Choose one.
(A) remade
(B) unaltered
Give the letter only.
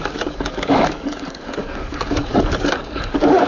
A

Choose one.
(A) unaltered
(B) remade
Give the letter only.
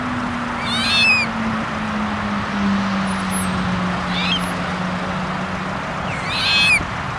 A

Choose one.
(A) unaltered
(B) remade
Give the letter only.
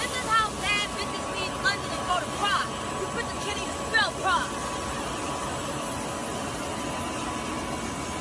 A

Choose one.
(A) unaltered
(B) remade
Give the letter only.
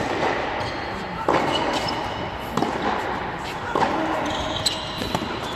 A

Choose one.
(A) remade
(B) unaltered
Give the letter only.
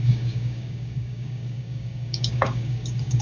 A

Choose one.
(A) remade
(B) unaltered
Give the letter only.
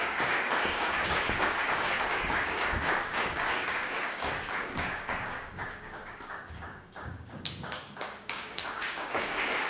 A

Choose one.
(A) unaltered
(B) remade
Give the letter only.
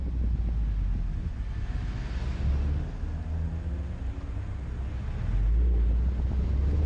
A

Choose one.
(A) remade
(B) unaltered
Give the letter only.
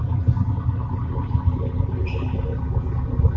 B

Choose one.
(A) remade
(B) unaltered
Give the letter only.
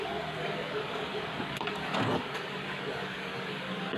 A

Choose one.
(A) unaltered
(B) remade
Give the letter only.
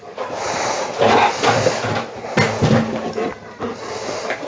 A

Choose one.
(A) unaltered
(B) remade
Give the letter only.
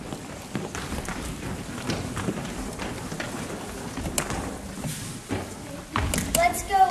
A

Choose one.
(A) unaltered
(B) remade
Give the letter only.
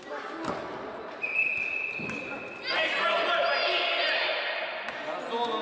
A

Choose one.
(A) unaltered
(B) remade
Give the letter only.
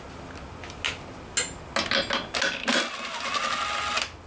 A